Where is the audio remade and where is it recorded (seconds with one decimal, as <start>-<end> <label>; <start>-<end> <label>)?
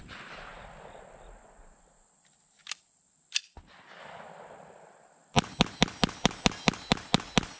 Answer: 0.0-7.6 recorded